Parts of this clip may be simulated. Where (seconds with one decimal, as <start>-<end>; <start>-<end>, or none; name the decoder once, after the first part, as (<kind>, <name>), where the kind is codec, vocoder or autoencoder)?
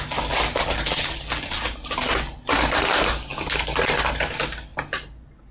4.7-5.5 (vocoder, BigVGAN v2)